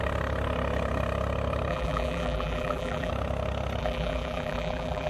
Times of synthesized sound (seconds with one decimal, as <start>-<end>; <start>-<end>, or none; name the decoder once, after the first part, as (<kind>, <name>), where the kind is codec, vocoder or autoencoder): 1.7-3.1 (vocoder, BigVGAN v2); 3.8-5.1